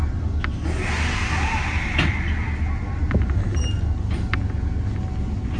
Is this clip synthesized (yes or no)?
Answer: no